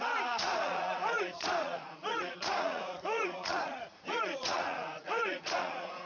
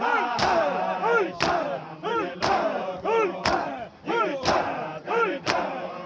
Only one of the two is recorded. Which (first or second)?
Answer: second